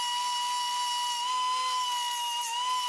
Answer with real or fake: real